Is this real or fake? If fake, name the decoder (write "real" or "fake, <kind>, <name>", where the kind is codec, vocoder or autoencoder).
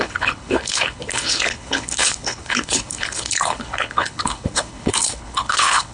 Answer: fake, codec, HILCodec